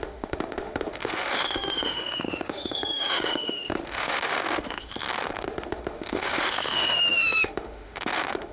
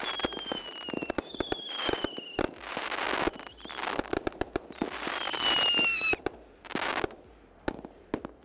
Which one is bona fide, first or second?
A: second